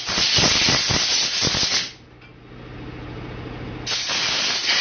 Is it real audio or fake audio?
real